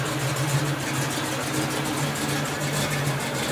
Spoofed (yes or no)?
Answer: no